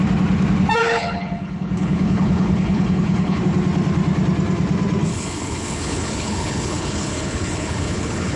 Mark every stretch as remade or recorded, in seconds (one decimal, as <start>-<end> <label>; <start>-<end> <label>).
0.0-0.8 recorded; 0.8-3.4 remade; 3.4-5.1 recorded; 5.1-8.4 remade